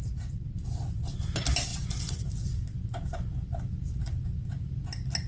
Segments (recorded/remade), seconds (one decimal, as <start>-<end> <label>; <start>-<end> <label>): 0.0-5.3 recorded